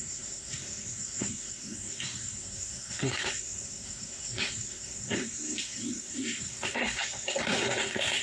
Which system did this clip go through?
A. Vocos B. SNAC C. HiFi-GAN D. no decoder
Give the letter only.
B